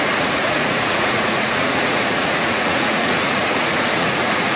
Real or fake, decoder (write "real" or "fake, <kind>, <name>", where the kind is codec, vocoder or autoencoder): fake, vocoder, Vocos